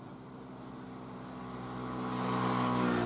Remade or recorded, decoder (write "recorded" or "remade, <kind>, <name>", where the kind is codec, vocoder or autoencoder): recorded